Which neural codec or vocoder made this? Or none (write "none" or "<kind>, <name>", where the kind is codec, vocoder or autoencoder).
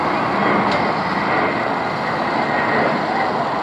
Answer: none